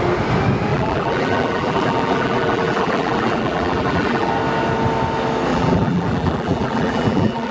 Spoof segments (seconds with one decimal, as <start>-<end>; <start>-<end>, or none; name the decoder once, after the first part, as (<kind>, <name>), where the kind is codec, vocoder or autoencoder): 0.7-4.3 (vocoder, BigVGAN v2); 5.5-7.5